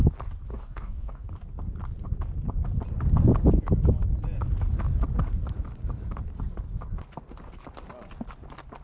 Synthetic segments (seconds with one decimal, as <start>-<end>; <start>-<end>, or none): 0.5-1.3